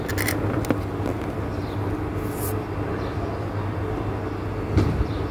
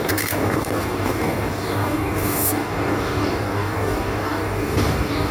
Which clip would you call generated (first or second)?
second